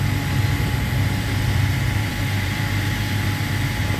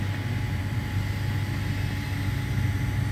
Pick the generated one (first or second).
first